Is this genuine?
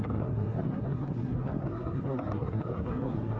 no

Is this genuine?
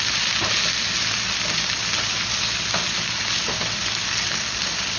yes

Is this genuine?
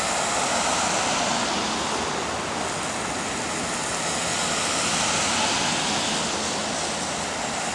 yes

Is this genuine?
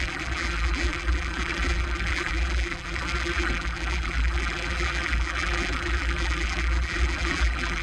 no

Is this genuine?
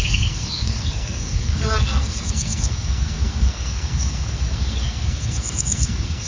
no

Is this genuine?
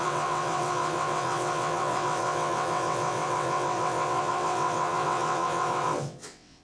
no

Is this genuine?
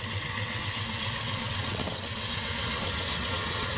no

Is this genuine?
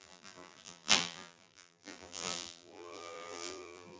no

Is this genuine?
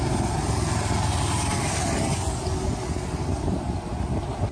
yes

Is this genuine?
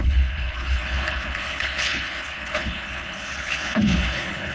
no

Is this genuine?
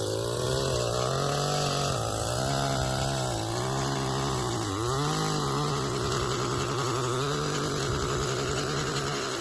yes